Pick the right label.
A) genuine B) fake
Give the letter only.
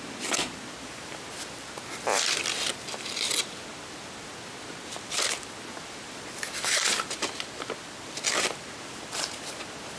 A